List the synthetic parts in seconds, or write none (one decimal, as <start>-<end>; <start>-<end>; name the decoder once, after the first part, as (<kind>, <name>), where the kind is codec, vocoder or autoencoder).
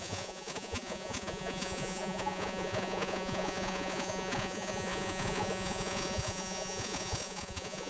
0.0-7.9 (vocoder, Vocos)